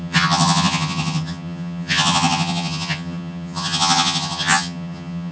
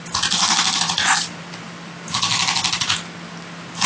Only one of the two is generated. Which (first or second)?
first